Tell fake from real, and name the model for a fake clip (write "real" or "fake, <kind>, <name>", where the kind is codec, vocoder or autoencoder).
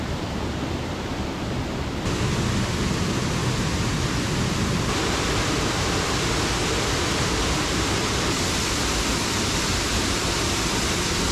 real